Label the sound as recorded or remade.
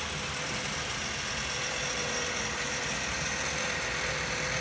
recorded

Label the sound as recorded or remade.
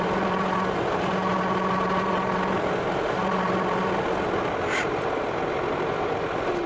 recorded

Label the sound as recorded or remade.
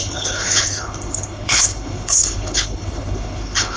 remade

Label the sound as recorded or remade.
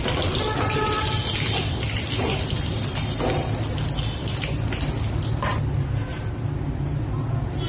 recorded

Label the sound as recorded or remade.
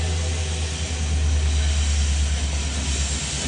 recorded